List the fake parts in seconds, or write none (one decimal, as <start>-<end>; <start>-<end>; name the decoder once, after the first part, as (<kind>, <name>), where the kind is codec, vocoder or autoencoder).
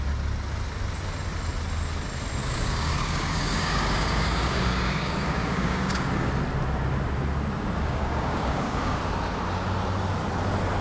2.4-6.3 (codec, DAC); 7.8-9.0